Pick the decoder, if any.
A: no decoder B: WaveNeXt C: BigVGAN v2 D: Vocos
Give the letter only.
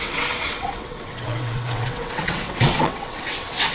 B